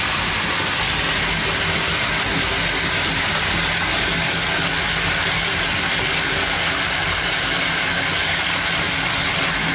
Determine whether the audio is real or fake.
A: real